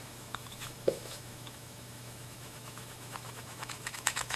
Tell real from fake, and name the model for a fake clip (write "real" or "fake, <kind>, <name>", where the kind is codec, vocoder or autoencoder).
fake, autoencoder, DAC-VAE